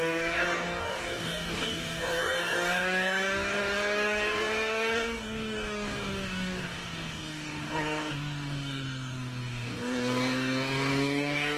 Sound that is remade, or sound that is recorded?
remade